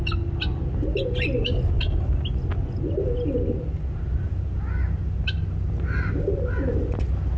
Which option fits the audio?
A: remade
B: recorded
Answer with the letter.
B